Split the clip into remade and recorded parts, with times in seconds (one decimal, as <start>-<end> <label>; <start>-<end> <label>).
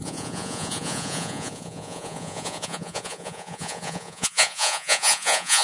0.0-5.6 remade